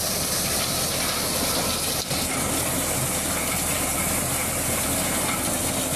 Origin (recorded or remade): recorded